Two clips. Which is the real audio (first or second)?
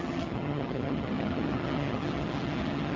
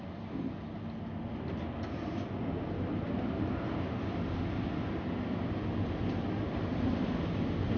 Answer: second